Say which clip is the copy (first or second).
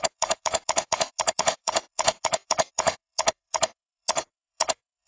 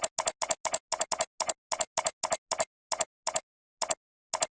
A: first